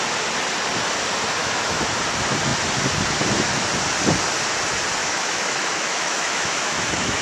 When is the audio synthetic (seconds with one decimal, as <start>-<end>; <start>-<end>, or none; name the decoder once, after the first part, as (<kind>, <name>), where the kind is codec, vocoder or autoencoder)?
1.4-1.9 (autoencoder, DAC-VAE); 5.0-7.2